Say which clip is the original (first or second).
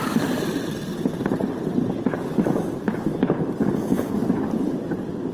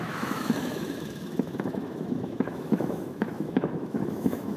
first